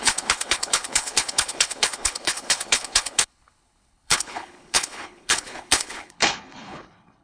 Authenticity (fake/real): fake